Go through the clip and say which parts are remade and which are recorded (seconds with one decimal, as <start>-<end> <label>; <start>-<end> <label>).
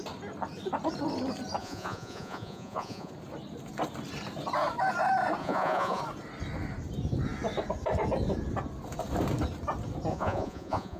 0.0-1.6 recorded; 1.6-3.1 remade; 3.1-5.4 recorded; 5.4-6.0 remade; 6.0-10.1 recorded; 10.1-11.0 remade